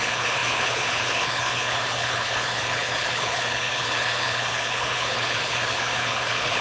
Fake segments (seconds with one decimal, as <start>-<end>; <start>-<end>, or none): 0.0-6.6